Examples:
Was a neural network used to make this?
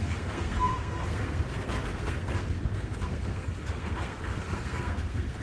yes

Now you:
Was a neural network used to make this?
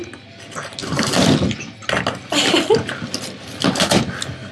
no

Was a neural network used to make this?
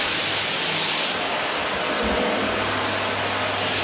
no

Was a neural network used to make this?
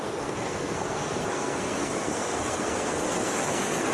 yes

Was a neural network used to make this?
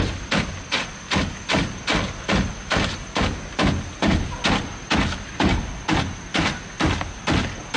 no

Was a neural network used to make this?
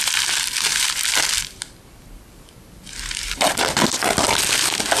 no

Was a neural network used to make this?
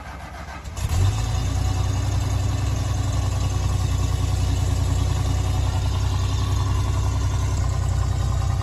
no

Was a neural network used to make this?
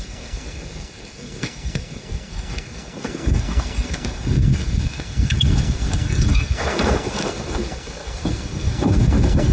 yes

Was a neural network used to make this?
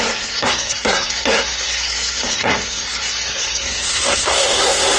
yes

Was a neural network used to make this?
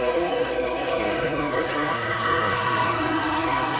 yes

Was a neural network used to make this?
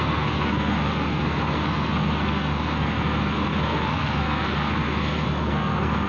yes